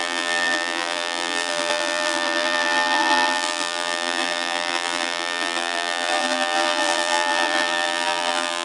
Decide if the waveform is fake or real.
fake